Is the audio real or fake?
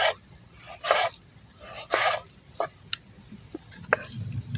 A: fake